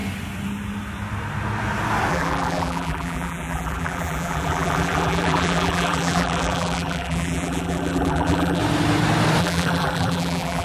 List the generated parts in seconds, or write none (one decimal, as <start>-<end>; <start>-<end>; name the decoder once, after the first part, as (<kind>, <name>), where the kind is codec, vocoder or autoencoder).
2.1-8.6 (vocoder, BigVGAN v2); 9.4-10.6